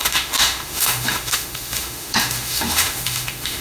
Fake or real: fake